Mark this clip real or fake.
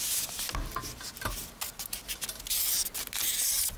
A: real